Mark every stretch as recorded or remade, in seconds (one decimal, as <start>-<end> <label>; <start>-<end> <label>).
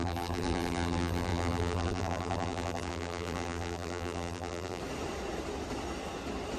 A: 0.0-4.8 remade; 4.8-6.6 recorded